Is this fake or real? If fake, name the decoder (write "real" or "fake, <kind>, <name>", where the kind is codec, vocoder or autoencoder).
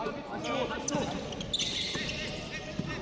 real